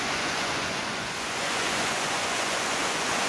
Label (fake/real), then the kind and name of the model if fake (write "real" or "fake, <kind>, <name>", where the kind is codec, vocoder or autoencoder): fake, vocoder, Vocos